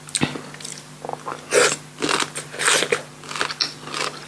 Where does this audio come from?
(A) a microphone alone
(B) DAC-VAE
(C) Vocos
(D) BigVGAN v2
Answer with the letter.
A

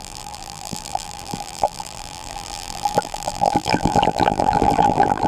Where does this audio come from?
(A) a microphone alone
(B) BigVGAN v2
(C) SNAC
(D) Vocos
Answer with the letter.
B